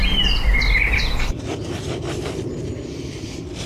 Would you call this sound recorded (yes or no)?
no